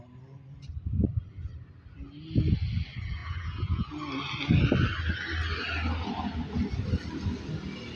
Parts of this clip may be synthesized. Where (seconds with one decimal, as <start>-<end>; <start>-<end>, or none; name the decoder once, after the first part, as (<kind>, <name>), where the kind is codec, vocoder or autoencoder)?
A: 3.2-3.9 (vocoder, Vocos)